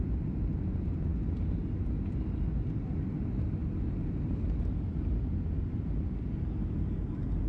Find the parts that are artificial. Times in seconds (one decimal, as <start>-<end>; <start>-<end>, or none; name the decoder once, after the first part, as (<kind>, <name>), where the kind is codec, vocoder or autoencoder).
3.6-4.1 (vocoder, BigVGAN v2)